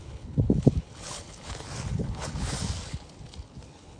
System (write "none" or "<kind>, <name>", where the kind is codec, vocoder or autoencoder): codec, HILCodec